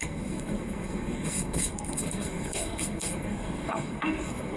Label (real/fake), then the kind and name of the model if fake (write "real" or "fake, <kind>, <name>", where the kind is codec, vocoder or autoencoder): fake, codec, SNAC